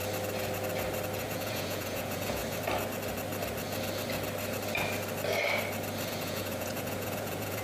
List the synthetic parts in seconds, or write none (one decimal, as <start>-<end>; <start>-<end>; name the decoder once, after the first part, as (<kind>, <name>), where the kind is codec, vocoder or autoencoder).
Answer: 1.2-2.4 (vocoder, Vocos); 6.1-7.6